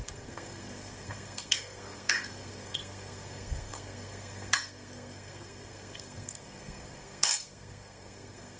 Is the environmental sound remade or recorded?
remade